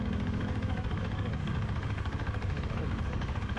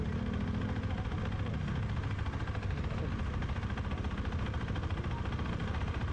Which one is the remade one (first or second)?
first